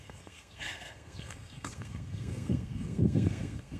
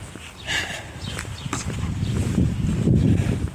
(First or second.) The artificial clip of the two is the first